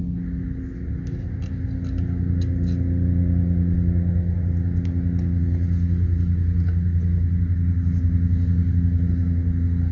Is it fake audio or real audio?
real